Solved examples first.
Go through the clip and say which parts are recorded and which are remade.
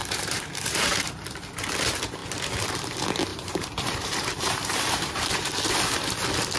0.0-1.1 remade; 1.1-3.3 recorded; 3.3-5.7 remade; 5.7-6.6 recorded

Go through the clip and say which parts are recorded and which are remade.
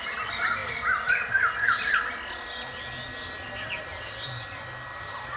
0.0-5.4 recorded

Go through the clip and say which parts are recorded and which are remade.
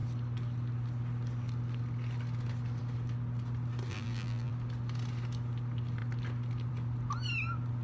0.0-3.9 recorded; 3.9-4.5 remade; 4.5-7.8 recorded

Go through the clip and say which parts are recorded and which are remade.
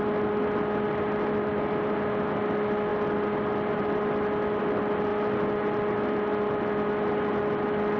0.0-8.0 recorded